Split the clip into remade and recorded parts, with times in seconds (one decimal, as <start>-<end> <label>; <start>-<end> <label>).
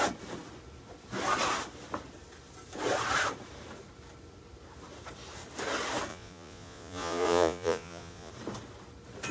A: 0.0-6.1 recorded; 6.1-8.3 remade; 8.3-9.3 recorded